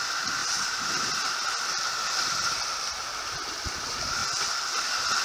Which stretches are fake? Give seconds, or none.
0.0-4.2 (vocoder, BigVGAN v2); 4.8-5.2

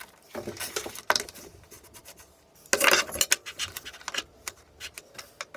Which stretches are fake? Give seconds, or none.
none

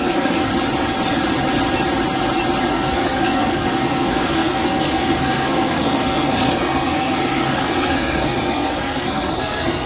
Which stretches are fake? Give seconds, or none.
0.0-0.5 (codec, SNAC); 2.7-9.9

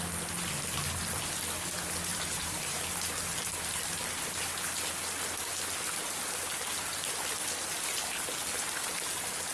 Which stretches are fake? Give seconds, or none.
2.1-2.9 (vocoder, BigVGAN v2)

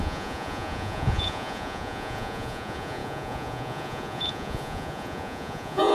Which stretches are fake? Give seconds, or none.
0.0-5.9 (vocoder, Vocos)

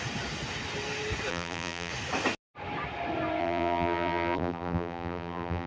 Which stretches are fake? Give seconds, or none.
1.3-1.9 (vocoder, BigVGAN v2); 3.4-5.7

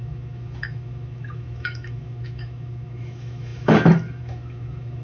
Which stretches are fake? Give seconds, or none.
0.0-5.0 (autoencoder, DAC-VAE)